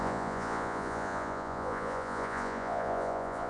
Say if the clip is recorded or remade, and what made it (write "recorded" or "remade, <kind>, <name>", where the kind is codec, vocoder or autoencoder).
remade, vocoder, Vocos